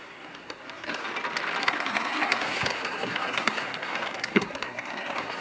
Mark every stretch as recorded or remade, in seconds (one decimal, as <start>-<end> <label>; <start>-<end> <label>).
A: 0.0-1.0 remade; 1.0-1.6 recorded; 1.6-5.4 remade